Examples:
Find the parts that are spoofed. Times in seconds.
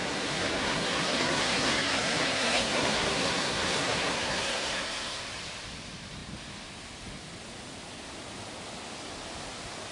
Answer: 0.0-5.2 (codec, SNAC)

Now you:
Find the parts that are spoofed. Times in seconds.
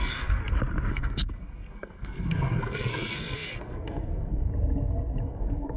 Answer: 0.0-0.4 (codec, SNAC); 0.9-4.5; 5.2-5.8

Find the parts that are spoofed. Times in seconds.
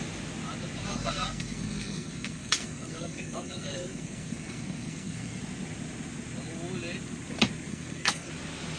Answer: 0.9-5.4 (codec, SNAC); 7.7-8.3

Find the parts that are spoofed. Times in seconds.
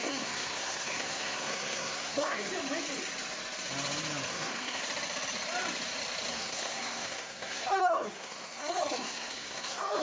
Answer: 0.0-2.5 (codec, SNAC); 4.3-4.8; 6.3-10.0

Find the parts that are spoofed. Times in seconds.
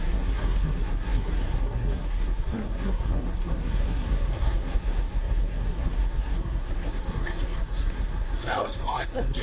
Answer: 0.0-9.4 (codec, SNAC)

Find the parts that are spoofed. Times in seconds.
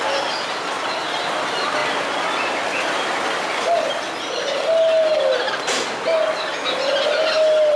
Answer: none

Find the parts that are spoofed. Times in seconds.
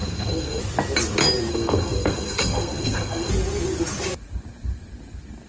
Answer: 0.0-0.6 (codec, SNAC); 1.5-3.3